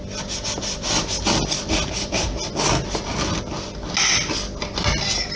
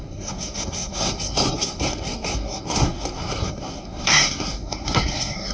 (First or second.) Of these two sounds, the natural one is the first